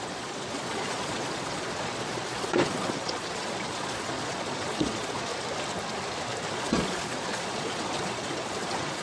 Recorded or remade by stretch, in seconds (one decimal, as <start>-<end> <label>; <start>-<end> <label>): 0.0-5.3 remade; 5.3-6.5 recorded; 6.5-9.0 remade